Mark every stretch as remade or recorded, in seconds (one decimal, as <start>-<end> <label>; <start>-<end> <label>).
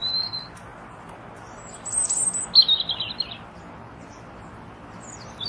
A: 0.0-0.7 remade; 0.7-2.8 recorded; 2.8-5.5 remade